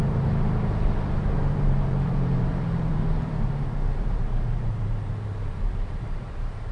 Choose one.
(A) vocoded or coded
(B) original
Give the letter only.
A